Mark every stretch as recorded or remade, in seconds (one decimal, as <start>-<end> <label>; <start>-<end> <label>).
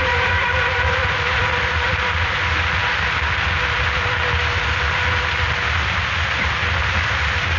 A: 0.0-2.8 remade; 2.8-4.1 recorded; 4.1-7.6 remade